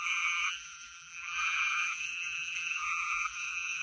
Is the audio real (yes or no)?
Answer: no